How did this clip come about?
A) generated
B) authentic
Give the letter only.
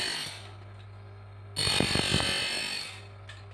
B